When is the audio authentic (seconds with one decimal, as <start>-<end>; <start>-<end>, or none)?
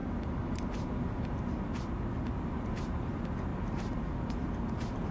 3.1-3.5